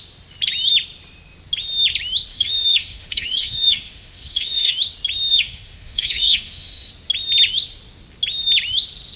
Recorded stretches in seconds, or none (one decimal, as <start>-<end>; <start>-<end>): 0.0-2.3; 4.7-5.3; 6.9-9.2